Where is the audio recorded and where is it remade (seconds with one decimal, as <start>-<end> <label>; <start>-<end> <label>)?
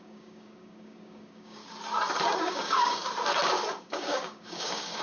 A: 0.0-1.6 remade; 1.6-2.4 recorded; 2.4-3.0 remade; 3.0-3.8 recorded; 3.8-5.0 remade